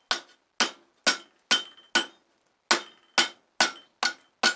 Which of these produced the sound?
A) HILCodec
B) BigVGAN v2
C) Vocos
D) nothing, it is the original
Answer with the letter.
D